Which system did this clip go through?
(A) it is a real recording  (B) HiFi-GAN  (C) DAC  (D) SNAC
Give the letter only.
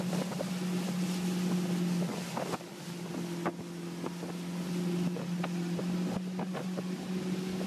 A